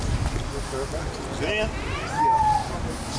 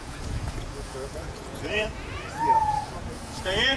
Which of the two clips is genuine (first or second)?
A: first